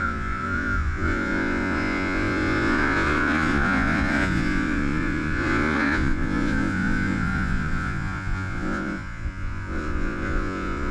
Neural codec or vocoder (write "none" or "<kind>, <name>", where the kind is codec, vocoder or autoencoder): vocoder, Vocos